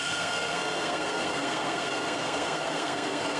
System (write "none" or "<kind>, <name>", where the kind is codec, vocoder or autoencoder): codec, SNAC